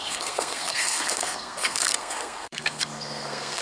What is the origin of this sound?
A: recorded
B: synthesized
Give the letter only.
B